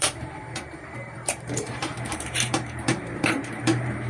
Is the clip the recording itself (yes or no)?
no